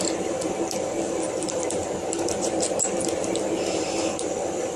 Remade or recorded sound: remade